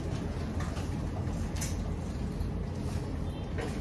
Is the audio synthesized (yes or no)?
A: no